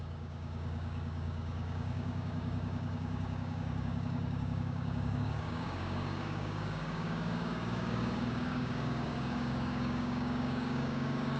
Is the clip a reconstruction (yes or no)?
yes